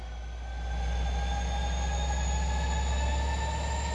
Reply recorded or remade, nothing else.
recorded